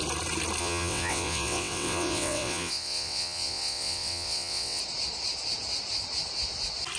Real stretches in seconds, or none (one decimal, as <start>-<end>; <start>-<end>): 0.0-0.6; 4.8-7.0